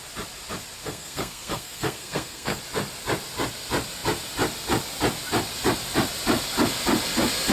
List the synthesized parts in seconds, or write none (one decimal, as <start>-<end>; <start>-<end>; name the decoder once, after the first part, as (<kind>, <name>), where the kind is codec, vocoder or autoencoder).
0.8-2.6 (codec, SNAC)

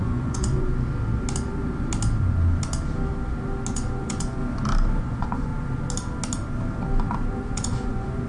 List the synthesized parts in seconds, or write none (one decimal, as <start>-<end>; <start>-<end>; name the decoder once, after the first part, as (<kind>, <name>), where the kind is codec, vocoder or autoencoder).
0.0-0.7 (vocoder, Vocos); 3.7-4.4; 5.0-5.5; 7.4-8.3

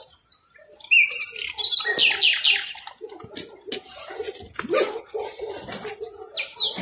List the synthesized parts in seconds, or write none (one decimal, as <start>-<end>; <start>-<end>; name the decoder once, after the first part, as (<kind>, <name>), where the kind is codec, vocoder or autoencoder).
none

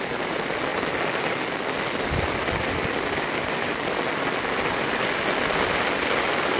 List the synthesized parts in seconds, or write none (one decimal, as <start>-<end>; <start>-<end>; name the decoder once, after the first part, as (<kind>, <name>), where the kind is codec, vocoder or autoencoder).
none